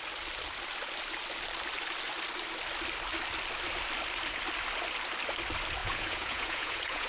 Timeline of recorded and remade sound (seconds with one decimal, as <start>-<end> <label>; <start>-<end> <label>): 0.0-5.8 recorded; 5.8-7.1 remade

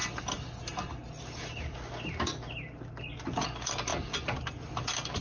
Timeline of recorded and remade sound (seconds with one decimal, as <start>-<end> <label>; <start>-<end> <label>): 0.0-5.2 recorded

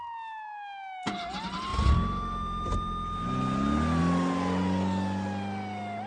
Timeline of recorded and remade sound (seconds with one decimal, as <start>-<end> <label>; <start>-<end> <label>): 0.0-6.1 recorded

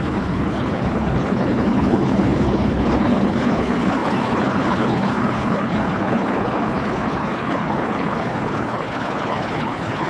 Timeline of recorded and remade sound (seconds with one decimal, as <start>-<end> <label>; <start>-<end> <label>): 0.0-10.1 remade

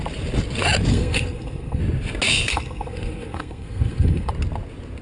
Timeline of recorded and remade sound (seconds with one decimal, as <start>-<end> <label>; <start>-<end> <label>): 0.0-0.9 recorded; 0.9-1.8 remade; 1.8-2.5 recorded; 2.5-4.3 remade; 4.3-5.0 recorded

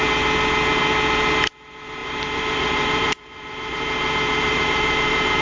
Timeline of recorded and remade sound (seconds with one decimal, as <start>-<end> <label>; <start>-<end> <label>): 0.0-2.0 recorded; 2.0-5.4 remade

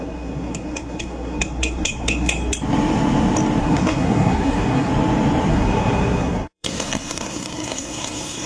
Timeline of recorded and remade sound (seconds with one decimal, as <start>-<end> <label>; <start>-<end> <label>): 0.0-2.4 remade; 2.4-3.6 recorded; 3.6-4.9 remade; 4.9-5.5 recorded; 5.5-8.5 remade

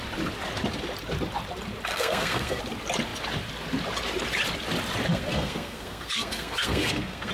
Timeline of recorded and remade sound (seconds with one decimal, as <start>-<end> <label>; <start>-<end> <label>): 0.0-1.9 recorded; 1.9-2.6 remade; 2.6-5.1 recorded; 5.1-7.3 remade